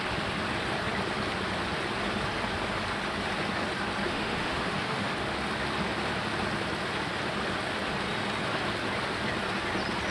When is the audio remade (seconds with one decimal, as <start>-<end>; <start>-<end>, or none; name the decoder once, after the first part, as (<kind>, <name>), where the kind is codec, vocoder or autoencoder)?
4.1-5.1 (autoencoder, DAC-VAE)